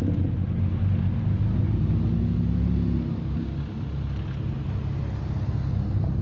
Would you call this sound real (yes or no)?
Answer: yes